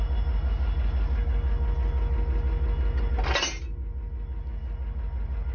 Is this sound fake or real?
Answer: real